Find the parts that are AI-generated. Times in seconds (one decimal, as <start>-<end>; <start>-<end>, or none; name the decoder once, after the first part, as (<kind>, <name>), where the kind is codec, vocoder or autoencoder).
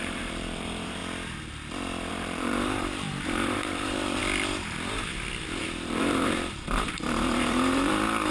0.0-1.0 (vocoder, BigVGAN v2); 2.1-4.2; 5.6-8.3